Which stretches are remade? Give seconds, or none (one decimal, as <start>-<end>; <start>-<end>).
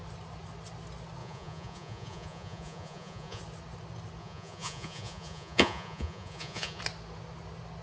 1.2-3.4; 4.2-6.8